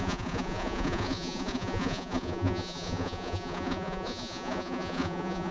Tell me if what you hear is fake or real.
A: fake